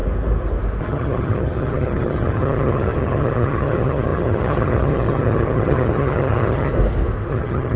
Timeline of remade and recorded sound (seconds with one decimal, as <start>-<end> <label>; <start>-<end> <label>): 0.0-0.8 recorded; 0.8-6.7 remade; 6.7-7.3 recorded; 7.3-7.8 remade